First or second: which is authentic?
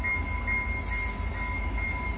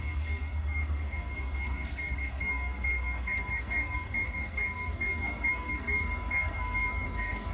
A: first